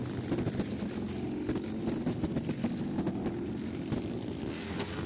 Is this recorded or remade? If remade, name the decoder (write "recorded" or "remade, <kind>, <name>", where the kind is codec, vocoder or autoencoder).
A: recorded